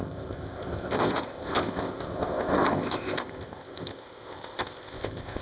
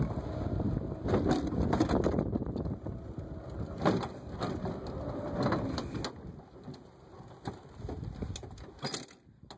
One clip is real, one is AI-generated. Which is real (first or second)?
second